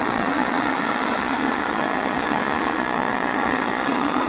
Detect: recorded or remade remade